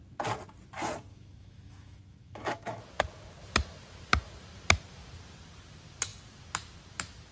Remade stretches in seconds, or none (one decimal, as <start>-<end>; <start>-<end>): 1.1-2.8

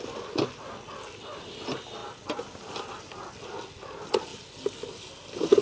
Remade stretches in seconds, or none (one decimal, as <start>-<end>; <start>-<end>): none

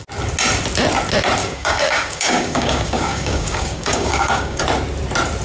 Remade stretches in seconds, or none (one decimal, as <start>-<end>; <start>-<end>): 1.4-4.6

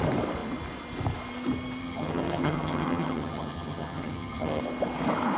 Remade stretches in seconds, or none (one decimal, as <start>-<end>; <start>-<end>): 1.8-4.6